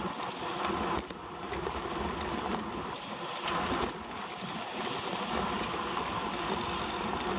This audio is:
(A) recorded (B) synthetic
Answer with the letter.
A